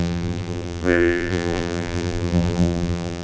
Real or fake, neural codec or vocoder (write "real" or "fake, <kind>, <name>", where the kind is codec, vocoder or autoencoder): fake, vocoder, BigVGAN v2